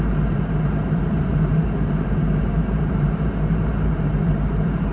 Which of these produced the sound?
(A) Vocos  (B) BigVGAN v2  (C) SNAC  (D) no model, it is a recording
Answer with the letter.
B